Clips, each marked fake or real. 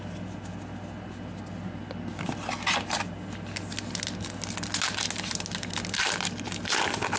real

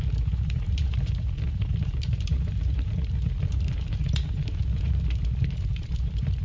fake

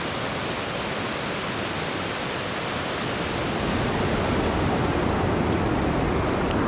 real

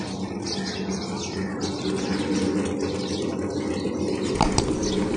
real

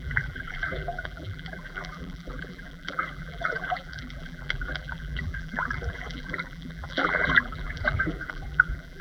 fake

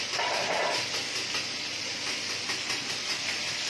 real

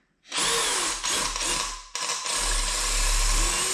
real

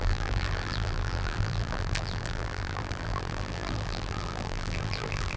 fake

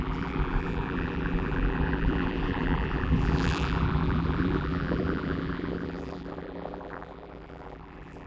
fake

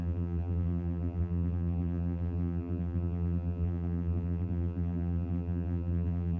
fake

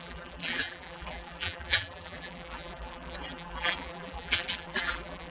fake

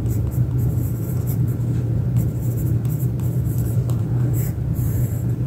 fake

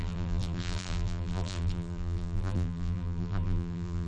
fake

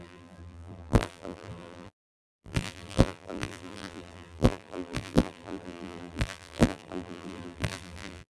fake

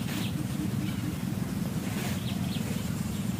real